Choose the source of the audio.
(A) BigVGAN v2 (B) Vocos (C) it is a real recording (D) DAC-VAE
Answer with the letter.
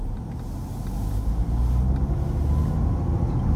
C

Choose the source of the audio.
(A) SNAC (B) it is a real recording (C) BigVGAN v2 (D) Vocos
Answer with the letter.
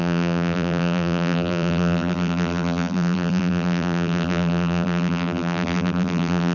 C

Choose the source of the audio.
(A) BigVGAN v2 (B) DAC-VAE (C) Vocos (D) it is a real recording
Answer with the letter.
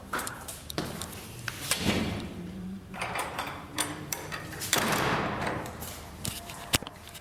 A